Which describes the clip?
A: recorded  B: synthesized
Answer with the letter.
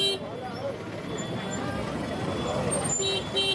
A